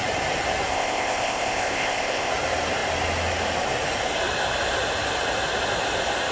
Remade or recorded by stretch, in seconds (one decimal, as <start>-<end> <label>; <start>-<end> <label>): 0.0-0.7 recorded; 0.7-2.3 remade; 2.3-6.3 recorded